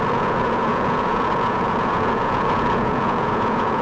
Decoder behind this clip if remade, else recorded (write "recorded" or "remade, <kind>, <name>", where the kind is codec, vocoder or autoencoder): remade, vocoder, Vocos